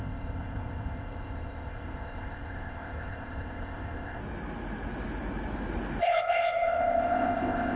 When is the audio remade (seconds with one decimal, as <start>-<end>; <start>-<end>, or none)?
0.0-4.2; 6.0-7.8